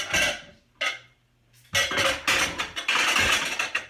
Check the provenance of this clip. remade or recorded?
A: recorded